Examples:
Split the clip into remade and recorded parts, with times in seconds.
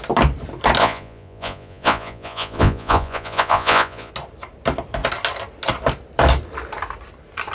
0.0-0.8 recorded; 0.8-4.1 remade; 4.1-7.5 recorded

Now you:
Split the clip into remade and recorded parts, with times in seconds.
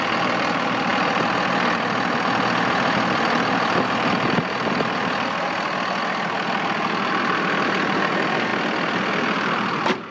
0.0-10.1 recorded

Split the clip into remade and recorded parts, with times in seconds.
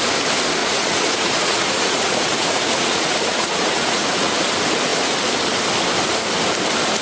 0.0-0.6 recorded; 0.6-4.3 remade; 4.3-7.0 recorded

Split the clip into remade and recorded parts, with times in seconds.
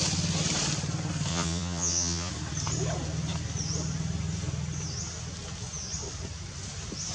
0.0-1.3 recorded; 1.3-2.3 remade; 2.3-7.1 recorded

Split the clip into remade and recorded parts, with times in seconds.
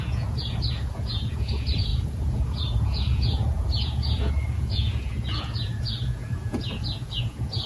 0.0-7.7 remade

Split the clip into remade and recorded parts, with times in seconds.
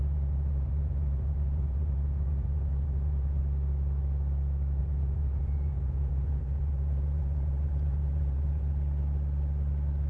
0.0-3.4 remade; 3.4-4.8 recorded; 4.8-8.7 remade; 8.7-10.1 recorded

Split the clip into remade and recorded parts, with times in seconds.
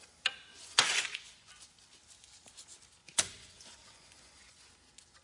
0.0-0.5 recorded; 0.5-1.5 remade; 1.5-3.0 recorded; 3.0-4.7 remade; 4.7-5.2 recorded